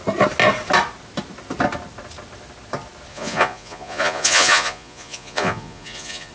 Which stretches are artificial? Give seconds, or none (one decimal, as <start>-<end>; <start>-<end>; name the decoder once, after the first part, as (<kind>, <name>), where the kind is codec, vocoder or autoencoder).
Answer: 3.1-6.3 (vocoder, Vocos)

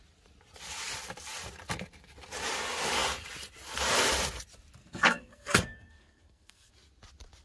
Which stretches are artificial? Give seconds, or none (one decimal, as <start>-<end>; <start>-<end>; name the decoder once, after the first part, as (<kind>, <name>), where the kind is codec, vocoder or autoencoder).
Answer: 4.8-6.7 (codec, SNAC)